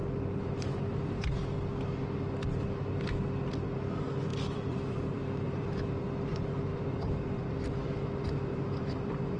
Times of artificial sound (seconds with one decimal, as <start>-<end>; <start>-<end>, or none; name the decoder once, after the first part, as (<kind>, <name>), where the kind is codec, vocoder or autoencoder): 4.3-5.8 (vocoder, BigVGAN v2); 6.7-9.4